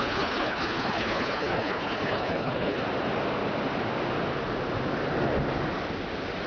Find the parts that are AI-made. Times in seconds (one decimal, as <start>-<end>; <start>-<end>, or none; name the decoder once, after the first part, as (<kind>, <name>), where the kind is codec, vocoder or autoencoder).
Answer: 0.0-2.8 (codec, HILCodec)